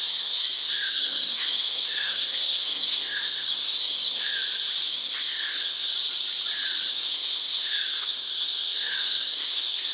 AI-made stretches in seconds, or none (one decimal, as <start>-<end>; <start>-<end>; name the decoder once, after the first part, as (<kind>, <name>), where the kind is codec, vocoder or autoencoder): 0.0-4.3 (codec, SNAC); 4.9-5.9; 6.9-9.9